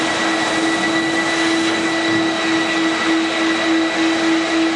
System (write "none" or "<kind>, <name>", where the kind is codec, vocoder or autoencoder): none